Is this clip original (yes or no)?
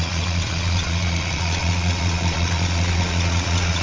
no